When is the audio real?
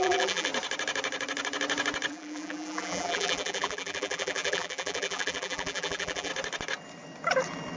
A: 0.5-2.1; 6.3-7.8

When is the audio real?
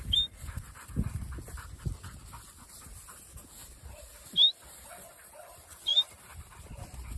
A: 0.0-5.9; 6.8-7.2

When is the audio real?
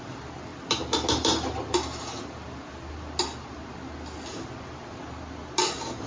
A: 0.0-6.1